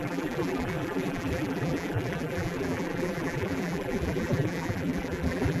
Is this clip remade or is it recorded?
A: remade